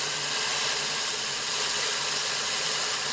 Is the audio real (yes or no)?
no